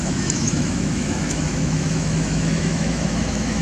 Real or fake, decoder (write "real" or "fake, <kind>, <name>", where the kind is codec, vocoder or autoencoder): fake, autoencoder, DAC-VAE